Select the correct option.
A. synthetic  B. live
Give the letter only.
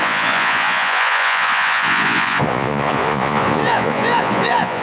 A